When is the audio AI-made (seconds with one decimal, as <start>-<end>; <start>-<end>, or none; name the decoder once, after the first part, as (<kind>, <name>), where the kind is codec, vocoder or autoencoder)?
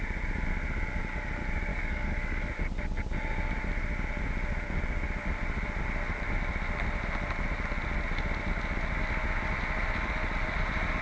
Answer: 1.7-2.5 (codec, DAC)